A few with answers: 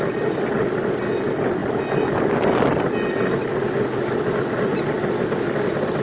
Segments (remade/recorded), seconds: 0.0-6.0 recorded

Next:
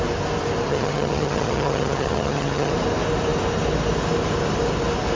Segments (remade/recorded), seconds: 0.0-0.7 recorded; 0.7-2.7 remade; 2.7-5.2 recorded

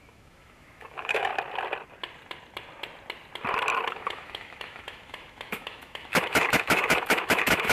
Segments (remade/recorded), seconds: 0.0-1.3 remade; 1.3-3.9 recorded; 3.9-7.7 remade